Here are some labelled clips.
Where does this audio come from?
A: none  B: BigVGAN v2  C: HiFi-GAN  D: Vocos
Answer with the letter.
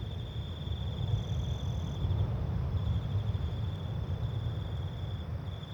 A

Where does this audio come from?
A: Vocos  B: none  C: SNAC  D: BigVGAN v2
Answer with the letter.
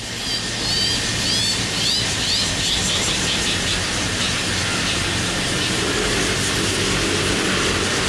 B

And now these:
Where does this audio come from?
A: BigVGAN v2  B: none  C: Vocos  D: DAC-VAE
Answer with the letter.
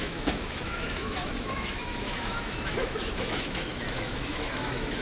D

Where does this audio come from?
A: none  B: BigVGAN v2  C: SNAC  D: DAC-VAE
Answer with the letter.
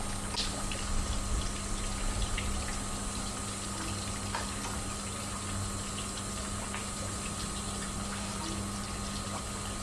A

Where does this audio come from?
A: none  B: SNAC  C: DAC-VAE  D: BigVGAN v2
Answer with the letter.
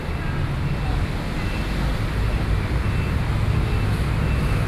A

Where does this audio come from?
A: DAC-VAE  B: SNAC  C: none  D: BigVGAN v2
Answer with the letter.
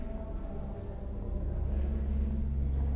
C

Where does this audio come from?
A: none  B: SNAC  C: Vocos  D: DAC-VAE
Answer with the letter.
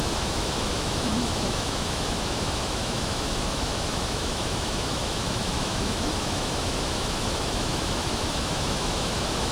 D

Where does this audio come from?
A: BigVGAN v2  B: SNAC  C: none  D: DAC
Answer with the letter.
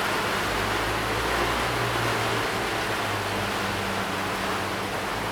C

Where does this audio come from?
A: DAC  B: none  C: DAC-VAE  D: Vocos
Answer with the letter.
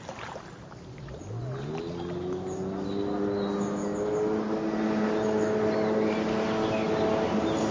B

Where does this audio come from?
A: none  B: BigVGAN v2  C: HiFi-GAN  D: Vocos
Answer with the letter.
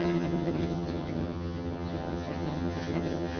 C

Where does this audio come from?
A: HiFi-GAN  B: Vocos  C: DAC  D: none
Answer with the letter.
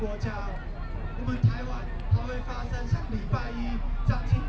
D